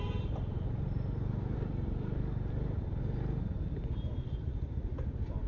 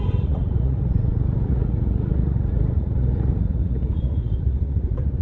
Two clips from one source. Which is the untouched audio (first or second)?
first